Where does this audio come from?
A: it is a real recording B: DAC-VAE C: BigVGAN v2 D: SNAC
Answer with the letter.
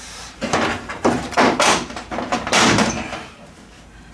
C